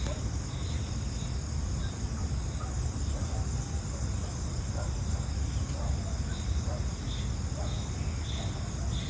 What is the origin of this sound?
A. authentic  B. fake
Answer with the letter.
A